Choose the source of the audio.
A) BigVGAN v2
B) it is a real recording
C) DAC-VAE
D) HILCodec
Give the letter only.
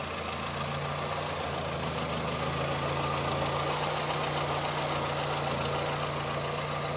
B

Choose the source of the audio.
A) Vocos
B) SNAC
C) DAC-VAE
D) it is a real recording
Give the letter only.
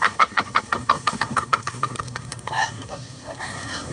B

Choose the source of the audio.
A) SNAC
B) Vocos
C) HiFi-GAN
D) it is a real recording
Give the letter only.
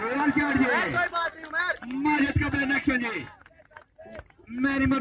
D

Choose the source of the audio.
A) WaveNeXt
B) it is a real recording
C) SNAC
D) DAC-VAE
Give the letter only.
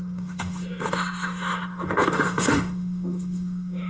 D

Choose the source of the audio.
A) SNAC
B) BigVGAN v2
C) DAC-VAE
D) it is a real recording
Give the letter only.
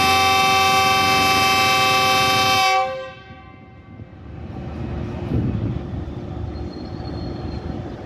D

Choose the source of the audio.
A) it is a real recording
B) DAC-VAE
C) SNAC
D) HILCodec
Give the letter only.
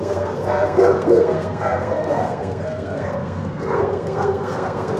C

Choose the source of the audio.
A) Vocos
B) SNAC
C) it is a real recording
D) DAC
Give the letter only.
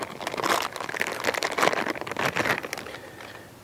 C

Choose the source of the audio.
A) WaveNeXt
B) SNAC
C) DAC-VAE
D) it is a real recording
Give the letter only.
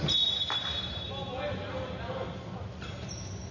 D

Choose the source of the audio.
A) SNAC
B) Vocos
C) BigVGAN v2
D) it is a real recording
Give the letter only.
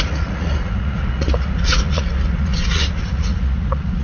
B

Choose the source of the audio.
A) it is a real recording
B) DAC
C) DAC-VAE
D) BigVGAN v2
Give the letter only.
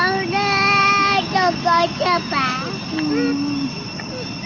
A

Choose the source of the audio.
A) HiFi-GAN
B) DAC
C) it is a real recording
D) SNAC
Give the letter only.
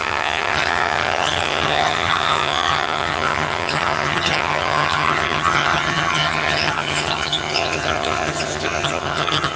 A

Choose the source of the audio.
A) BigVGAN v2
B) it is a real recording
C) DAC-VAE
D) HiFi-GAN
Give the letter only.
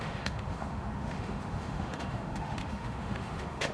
C